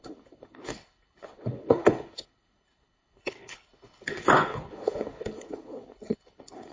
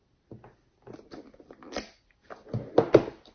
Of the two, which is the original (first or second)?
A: second